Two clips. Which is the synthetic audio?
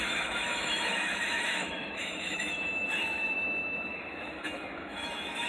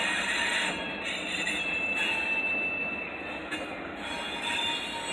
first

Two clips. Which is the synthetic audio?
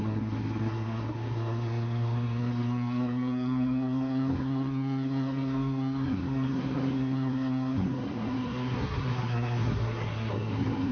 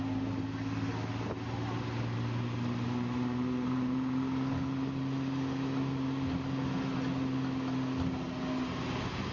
first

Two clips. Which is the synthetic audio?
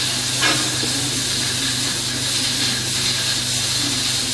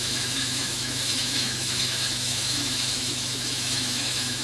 second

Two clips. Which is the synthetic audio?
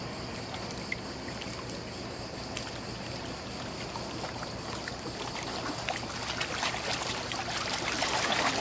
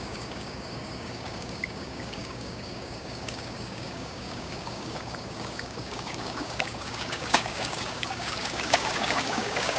second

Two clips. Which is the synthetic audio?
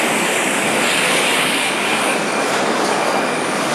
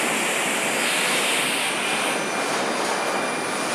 first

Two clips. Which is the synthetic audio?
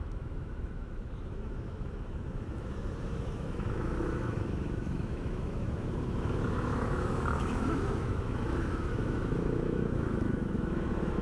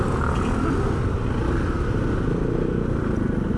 first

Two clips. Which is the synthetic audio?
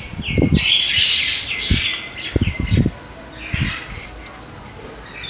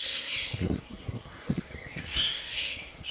second